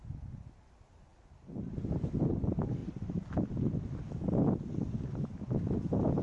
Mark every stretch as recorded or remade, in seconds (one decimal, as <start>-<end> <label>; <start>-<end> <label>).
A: 0.0-6.2 recorded